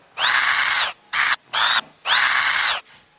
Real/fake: real